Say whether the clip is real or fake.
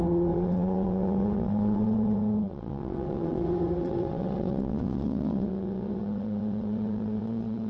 fake